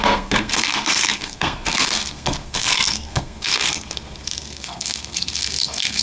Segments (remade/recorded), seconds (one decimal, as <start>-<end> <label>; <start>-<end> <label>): 0.0-6.0 remade